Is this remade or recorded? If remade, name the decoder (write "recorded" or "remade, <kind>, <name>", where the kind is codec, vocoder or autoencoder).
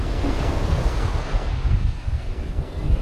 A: remade, codec, SNAC